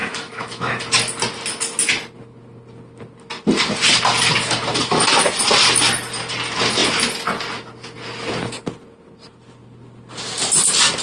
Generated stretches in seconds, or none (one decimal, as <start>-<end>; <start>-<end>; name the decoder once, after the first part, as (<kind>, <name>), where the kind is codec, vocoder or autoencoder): 0.0-0.8 (autoencoder, DAC-VAE)